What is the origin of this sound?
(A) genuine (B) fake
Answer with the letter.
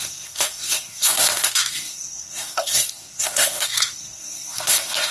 B